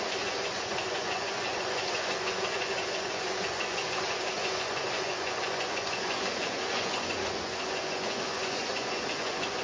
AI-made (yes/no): yes